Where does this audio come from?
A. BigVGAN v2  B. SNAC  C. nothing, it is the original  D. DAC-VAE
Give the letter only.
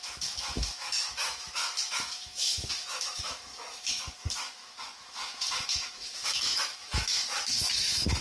D